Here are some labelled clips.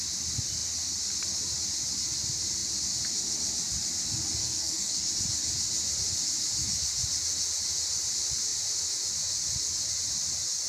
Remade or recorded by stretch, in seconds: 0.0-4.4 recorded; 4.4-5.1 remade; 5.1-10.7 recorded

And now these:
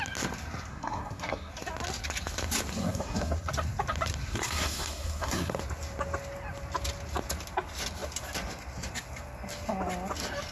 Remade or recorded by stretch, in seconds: 0.0-0.7 recorded; 0.7-1.5 remade; 1.5-2.7 recorded; 2.7-3.5 remade; 3.5-4.3 recorded; 4.3-5.6 remade; 5.6-10.5 recorded

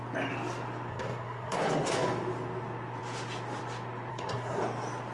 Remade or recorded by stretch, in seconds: 0.0-0.9 recorded; 0.9-1.9 remade; 1.9-4.1 recorded; 4.1-4.6 remade; 4.6-5.1 recorded

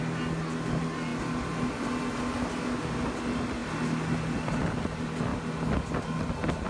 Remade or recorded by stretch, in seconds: 0.0-6.7 recorded

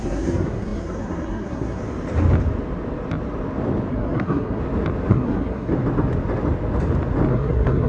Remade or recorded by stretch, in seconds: 0.0-1.8 remade; 1.8-3.9 recorded; 3.9-4.6 remade; 4.6-5.1 recorded; 5.1-5.7 remade; 5.7-7.3 recorded; 7.3-7.9 remade